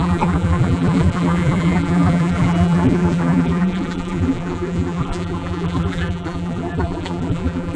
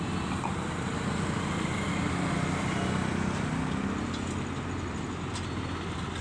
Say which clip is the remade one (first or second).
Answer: first